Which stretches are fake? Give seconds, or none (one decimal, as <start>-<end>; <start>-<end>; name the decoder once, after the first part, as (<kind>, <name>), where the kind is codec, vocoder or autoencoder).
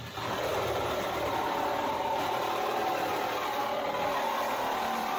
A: 0.0-5.2 (vocoder, BigVGAN v2)